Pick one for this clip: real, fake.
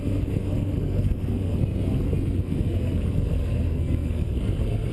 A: fake